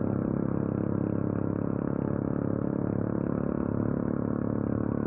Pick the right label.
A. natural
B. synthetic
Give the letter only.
A